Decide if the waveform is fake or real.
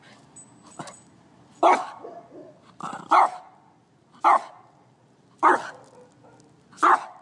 real